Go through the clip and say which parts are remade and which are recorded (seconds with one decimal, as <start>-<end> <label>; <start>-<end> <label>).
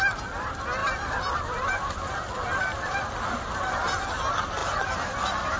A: 0.0-0.8 recorded; 0.8-3.5 remade; 3.5-4.6 recorded; 4.6-5.6 remade